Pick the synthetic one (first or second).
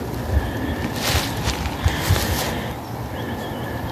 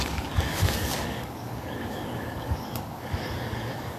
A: second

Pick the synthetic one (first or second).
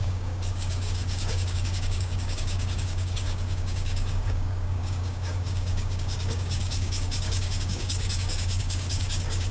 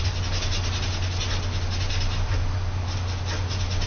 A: first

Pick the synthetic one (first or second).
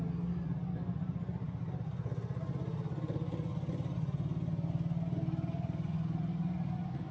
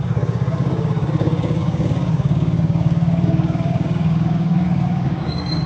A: second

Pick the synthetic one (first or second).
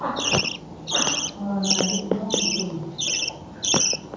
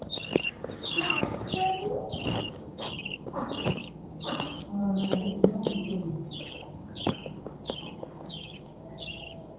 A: second